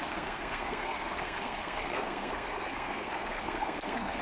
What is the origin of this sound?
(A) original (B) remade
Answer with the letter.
B